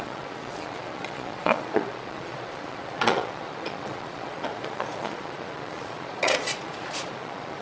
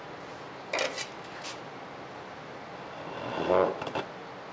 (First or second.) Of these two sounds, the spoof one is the first